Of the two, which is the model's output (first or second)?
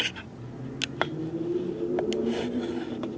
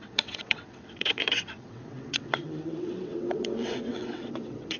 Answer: second